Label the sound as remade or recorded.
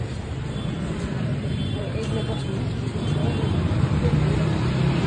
remade